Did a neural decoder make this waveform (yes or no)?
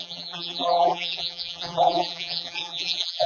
yes